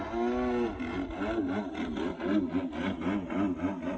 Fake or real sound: real